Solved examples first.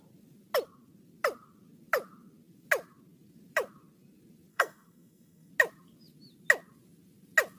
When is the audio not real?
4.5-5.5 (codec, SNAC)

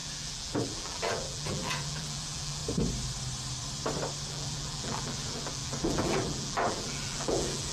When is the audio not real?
0.0-2.6 (vocoder, BigVGAN v2); 4.3-7.7